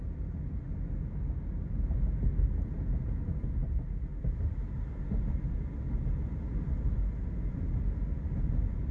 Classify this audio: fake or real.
real